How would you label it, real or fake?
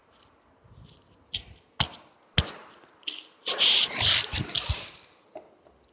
real